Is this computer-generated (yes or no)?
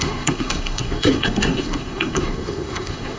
yes